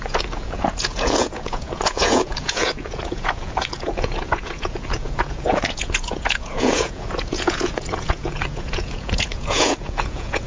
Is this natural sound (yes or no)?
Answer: no